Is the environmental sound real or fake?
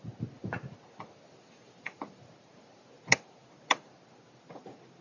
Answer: real